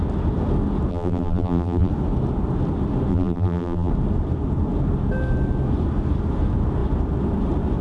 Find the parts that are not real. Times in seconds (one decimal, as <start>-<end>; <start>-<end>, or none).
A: 0.9-1.9; 3.1-3.9